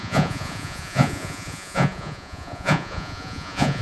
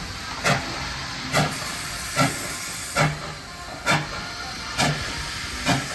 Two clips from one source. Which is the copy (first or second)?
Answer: first